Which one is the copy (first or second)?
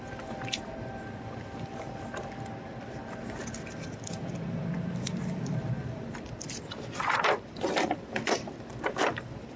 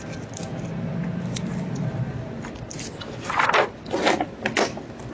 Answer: first